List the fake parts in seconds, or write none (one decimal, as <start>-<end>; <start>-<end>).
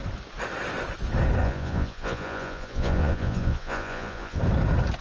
1.4-4.4